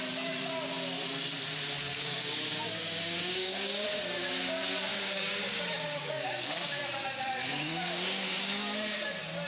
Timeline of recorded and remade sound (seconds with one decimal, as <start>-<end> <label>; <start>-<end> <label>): 0.0-1.9 recorded; 1.9-4.0 remade; 4.0-4.9 recorded; 4.9-6.8 remade; 6.8-7.4 recorded; 7.4-9.1 remade; 9.1-9.5 recorded